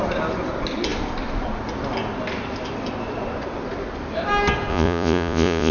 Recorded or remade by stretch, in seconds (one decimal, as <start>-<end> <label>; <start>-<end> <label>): 0.0-4.7 recorded; 4.7-5.7 remade